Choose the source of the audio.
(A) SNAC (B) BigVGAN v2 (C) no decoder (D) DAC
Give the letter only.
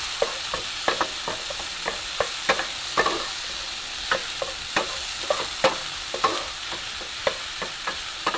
C